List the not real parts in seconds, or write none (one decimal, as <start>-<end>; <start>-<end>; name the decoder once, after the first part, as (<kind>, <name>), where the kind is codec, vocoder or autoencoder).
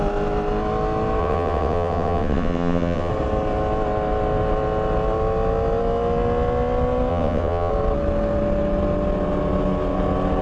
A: 1.2-3.1 (vocoder, WaveNeXt); 7.1-7.7